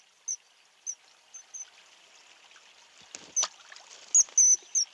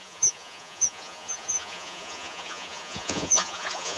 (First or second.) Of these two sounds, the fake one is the second